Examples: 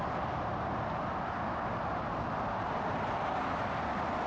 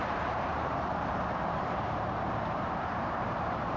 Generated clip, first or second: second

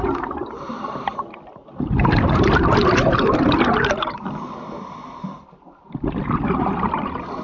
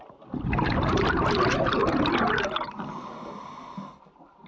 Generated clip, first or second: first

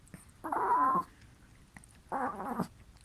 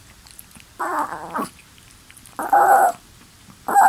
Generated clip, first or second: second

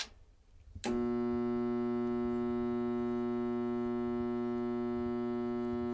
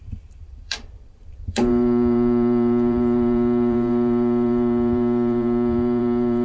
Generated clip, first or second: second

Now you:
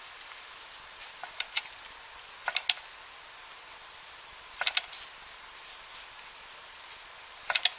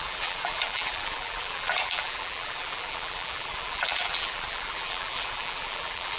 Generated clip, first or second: second